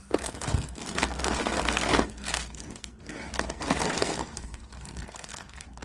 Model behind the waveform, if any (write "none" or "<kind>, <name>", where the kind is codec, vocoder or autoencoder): codec, SNAC